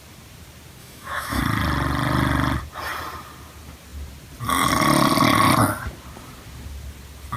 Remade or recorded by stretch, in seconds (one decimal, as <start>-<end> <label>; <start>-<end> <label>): 0.0-0.8 recorded; 0.8-1.4 remade; 1.4-7.4 recorded